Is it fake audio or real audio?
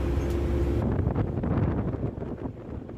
real